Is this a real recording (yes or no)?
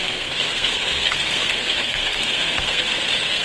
no